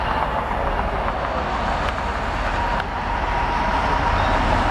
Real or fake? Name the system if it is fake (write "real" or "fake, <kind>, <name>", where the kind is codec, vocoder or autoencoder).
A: real